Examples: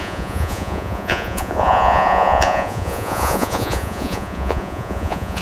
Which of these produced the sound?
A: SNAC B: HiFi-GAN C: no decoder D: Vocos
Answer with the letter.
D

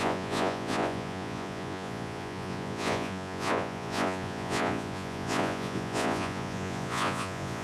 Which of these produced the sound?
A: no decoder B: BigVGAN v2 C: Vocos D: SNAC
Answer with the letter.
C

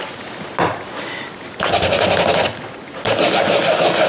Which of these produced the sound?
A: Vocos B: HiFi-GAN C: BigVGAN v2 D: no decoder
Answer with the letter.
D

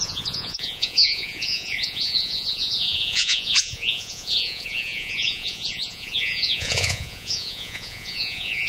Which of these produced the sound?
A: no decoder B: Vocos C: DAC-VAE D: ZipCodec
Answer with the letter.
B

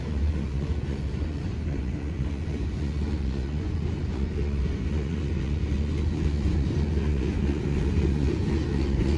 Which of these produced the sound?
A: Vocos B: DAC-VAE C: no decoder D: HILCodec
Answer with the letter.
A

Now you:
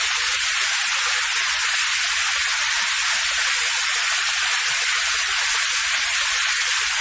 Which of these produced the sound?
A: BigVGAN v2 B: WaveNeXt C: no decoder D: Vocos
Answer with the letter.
C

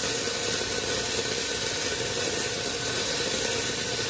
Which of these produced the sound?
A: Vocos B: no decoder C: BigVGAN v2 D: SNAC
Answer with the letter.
B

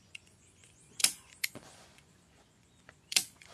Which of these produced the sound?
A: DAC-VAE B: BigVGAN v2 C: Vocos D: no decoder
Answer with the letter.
C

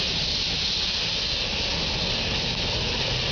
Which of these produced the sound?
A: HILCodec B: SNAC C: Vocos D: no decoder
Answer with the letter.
D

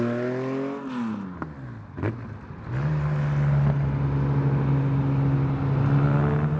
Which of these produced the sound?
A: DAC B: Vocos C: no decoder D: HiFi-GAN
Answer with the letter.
C